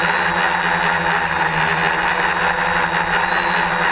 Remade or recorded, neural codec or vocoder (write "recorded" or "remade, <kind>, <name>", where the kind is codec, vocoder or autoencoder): recorded